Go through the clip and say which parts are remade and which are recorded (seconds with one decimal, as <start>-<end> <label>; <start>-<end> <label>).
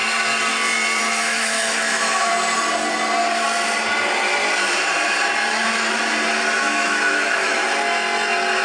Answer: 0.0-1.0 recorded; 1.0-2.3 remade; 2.3-6.6 recorded; 6.6-7.6 remade; 7.6-8.6 recorded